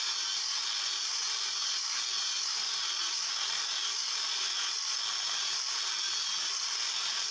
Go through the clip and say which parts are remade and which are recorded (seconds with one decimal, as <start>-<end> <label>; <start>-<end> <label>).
0.0-7.3 recorded